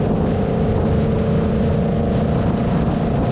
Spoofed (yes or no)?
no